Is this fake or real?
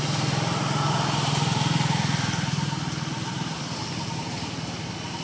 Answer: real